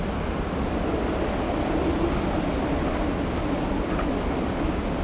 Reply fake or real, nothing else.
real